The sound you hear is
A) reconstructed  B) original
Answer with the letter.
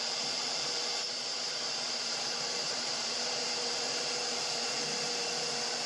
A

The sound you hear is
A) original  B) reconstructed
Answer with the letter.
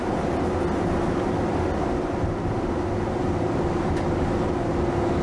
A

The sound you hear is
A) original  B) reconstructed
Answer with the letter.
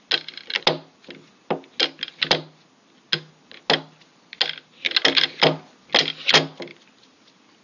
A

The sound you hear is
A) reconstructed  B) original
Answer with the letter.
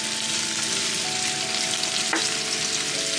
B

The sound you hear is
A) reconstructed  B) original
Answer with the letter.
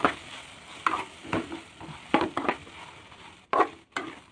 B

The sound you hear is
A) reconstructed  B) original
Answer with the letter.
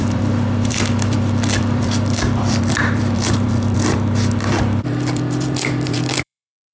A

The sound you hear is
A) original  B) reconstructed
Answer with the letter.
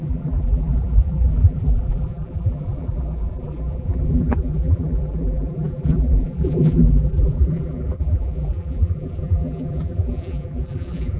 B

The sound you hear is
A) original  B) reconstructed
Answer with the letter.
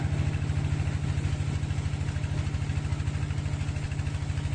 A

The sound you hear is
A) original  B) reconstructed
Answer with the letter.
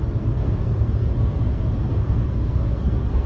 B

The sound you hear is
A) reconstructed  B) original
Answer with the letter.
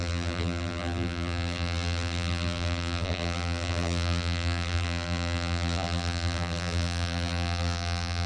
A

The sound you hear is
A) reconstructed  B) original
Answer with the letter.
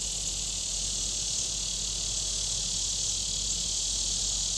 B